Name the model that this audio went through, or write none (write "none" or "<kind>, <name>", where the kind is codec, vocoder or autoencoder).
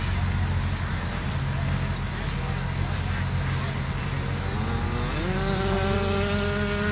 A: none